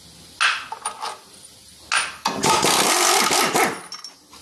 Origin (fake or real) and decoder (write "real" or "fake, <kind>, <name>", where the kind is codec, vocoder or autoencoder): real